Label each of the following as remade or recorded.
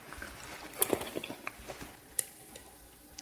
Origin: remade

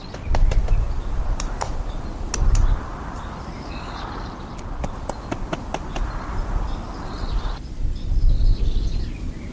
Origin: recorded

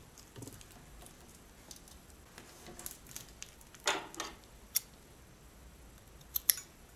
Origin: recorded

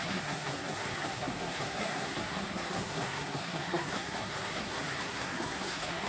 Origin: remade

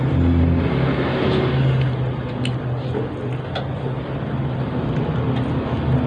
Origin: recorded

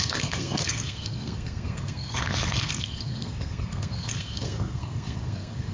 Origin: remade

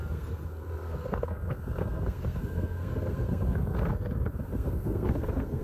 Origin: remade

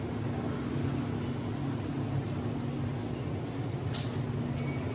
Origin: recorded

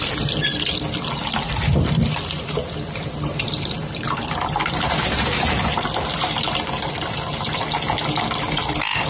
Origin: recorded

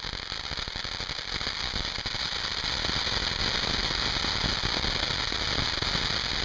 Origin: recorded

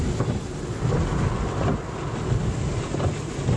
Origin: recorded